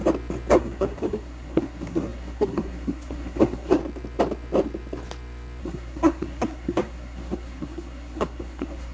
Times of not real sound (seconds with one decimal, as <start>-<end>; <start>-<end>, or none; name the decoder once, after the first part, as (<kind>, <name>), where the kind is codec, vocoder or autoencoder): 0.5-3.8 (codec, SNAC); 5.6-8.9